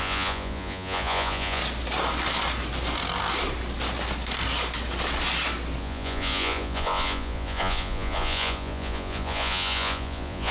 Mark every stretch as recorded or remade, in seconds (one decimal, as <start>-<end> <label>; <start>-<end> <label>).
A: 0.0-1.6 remade; 1.6-5.8 recorded; 5.8-10.5 remade

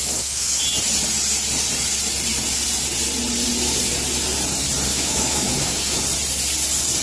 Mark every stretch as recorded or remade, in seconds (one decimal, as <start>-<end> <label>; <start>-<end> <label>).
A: 0.0-0.6 remade; 0.6-4.9 recorded; 4.9-6.0 remade; 6.0-7.0 recorded